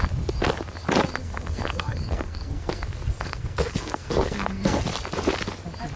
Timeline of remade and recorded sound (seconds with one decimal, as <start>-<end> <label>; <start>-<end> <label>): 0.0-1.2 recorded; 1.2-4.8 remade; 4.8-6.0 recorded